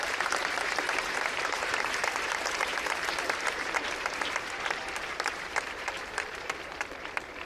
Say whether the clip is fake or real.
fake